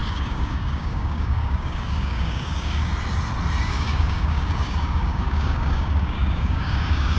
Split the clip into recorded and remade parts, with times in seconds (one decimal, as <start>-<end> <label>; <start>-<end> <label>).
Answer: 0.0-2.9 remade; 2.9-3.6 recorded; 3.6-7.2 remade